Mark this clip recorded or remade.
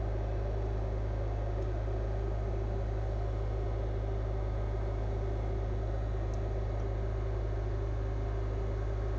recorded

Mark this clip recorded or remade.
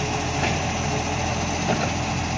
recorded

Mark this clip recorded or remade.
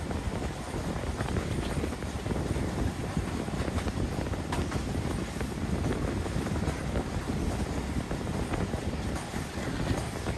recorded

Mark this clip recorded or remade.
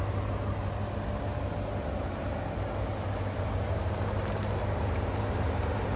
recorded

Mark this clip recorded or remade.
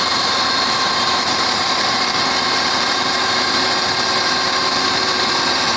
remade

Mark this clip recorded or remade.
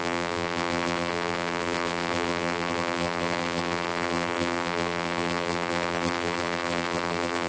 remade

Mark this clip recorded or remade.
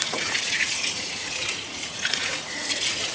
remade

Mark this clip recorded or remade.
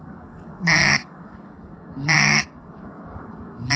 remade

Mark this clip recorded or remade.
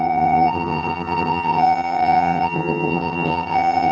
remade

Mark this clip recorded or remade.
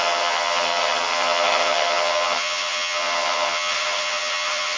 remade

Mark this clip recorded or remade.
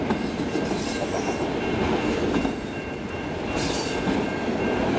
remade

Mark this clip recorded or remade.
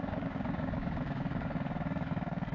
remade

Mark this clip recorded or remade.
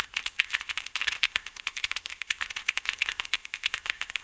remade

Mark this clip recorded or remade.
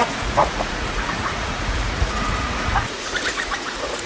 remade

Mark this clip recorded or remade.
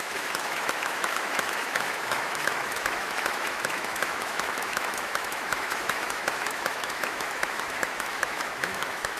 remade